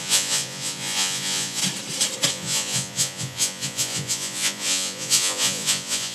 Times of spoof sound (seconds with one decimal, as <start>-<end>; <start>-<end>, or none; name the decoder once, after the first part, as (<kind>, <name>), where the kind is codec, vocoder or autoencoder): 0.0-1.6 (vocoder, Vocos); 2.3-6.1

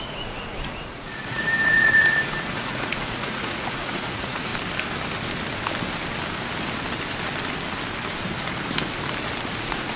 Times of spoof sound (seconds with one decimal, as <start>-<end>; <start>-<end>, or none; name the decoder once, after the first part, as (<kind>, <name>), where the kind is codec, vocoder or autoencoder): 0.0-4.5 (vocoder, Vocos); 9.6-10.0

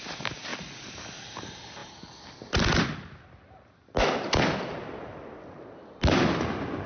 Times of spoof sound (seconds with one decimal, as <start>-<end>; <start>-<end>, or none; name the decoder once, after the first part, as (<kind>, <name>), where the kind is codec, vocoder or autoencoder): none